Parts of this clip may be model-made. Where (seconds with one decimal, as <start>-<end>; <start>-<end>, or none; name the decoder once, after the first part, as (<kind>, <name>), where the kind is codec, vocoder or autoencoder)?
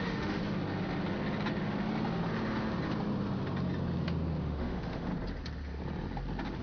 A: 0.0-0.4 (autoencoder, DAC-VAE); 4.4-5.1